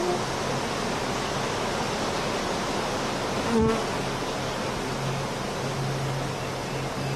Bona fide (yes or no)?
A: yes